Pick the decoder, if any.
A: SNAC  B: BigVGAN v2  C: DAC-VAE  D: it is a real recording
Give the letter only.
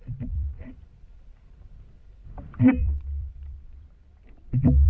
B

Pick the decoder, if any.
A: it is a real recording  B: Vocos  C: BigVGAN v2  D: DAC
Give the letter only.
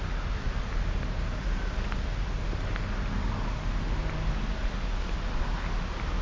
A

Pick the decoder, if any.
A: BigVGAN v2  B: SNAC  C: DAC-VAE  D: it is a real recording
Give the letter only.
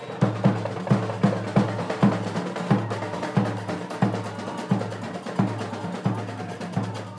D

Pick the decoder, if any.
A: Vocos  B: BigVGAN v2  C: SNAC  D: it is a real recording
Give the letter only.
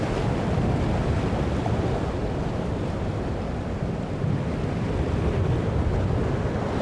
D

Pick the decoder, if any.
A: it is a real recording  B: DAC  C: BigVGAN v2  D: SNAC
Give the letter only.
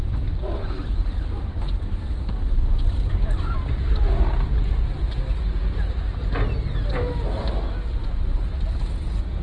A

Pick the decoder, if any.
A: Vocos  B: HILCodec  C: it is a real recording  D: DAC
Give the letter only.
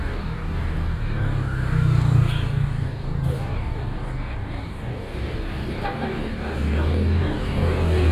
D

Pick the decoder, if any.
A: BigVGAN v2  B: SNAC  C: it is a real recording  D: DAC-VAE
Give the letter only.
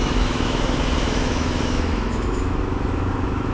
D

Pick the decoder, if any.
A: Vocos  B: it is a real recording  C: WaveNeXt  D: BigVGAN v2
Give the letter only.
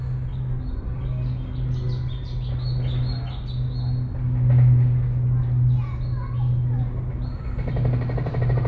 B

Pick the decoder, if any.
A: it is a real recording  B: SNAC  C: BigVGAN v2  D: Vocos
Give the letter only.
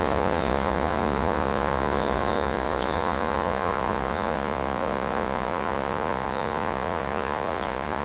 D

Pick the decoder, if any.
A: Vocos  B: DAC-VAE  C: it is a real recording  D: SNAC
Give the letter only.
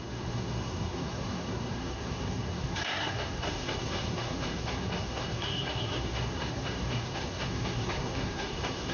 D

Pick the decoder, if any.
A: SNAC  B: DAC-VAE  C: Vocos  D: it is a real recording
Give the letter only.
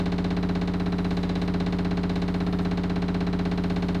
D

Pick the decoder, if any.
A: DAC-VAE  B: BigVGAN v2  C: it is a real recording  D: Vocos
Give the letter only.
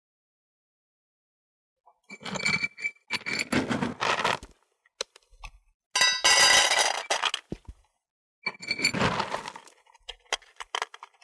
C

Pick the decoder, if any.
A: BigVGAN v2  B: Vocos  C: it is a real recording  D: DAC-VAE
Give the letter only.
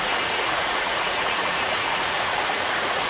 B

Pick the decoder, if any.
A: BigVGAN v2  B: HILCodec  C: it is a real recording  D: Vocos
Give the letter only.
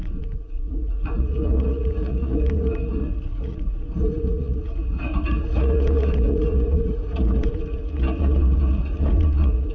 D